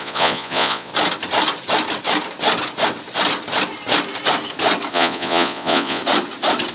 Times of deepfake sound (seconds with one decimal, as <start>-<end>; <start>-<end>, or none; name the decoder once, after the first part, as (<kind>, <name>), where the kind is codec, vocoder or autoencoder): 0.0-0.9 (vocoder, Vocos); 4.9-6.0